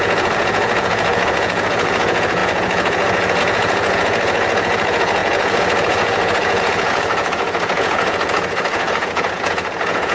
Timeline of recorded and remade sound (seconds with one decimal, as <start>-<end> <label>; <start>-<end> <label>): 0.0-10.1 remade